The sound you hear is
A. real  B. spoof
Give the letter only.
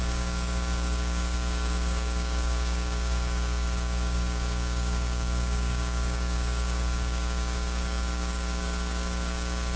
B